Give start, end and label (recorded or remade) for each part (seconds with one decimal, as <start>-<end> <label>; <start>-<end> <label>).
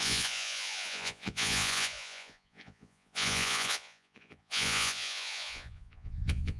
0.0-6.6 remade